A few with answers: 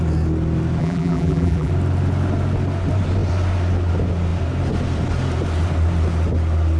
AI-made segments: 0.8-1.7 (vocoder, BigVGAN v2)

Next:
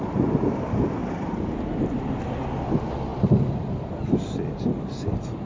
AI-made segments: 1.0-2.0 (vocoder, BigVGAN v2)

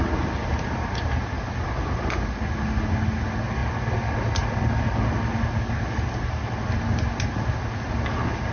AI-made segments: none

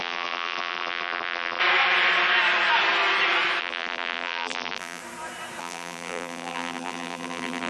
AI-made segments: 0.0-1.6 (vocoder, BigVGAN v2); 3.6-5.0; 5.6-7.7

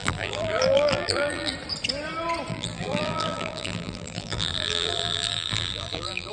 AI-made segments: 0.0-1.5 (vocoder, BigVGAN v2); 2.5-6.3

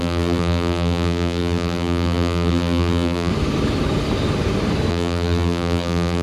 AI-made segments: 0.0-3.3 (vocoder, BigVGAN v2); 4.9-6.2

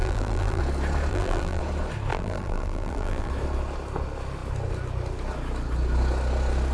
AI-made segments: 0.0-0.6 (vocoder, BigVGAN v2); 1.1-1.6; 2.1-3.3